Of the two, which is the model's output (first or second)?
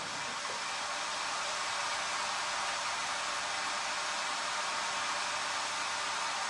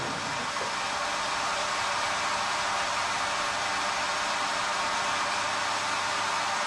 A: first